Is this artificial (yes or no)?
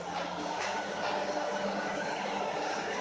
yes